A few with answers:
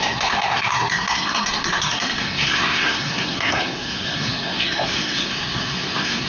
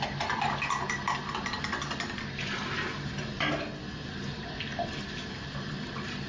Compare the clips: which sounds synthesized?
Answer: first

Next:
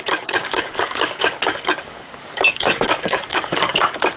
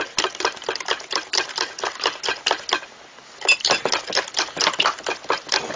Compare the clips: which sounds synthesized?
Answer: first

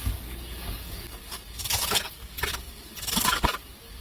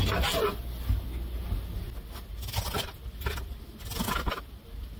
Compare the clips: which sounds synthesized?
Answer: first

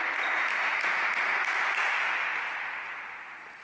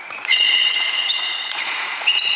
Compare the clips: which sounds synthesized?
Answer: second